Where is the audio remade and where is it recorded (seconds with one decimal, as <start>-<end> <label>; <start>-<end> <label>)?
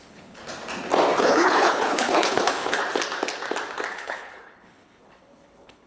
0.0-0.4 remade; 0.4-1.2 recorded; 1.2-2.8 remade; 2.8-3.9 recorded; 3.9-5.9 remade